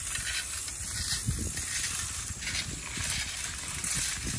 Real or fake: real